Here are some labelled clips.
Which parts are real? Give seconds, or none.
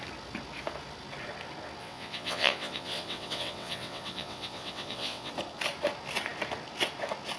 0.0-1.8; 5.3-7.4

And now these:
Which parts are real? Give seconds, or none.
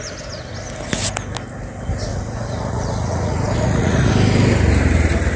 0.0-2.1; 4.1-5.4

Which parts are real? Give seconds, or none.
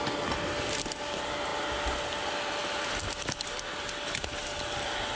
0.0-5.1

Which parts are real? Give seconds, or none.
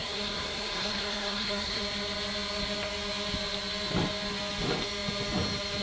1.8-5.8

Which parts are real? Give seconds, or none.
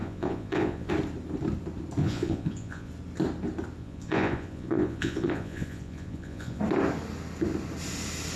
0.9-2.0; 2.9-3.8; 6.6-8.4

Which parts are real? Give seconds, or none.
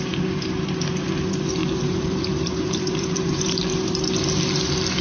0.0-1.6; 3.4-5.0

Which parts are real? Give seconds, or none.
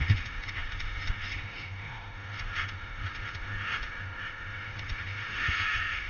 none